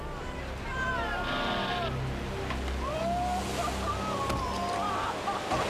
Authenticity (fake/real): real